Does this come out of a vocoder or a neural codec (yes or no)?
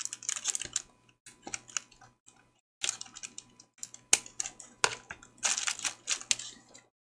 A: no